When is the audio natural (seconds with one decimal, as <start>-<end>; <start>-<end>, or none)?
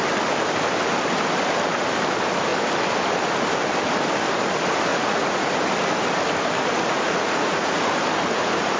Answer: 0.0-4.9; 5.6-6.9; 7.8-8.8